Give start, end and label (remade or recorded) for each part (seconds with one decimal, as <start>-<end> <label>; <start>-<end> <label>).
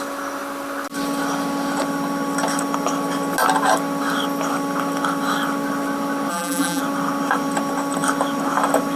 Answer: 0.0-6.3 recorded; 6.3-6.8 remade; 6.8-9.0 recorded